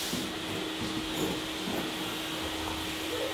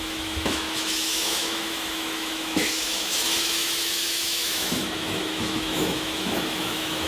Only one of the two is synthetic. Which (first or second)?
second